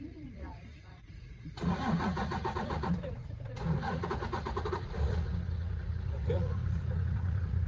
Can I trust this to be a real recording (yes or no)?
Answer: no